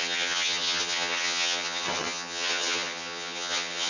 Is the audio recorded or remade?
remade